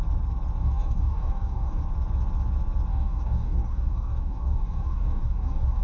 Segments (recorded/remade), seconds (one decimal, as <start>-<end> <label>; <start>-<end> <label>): 0.0-0.6 recorded; 0.6-1.8 remade; 1.8-2.9 recorded; 2.9-5.8 remade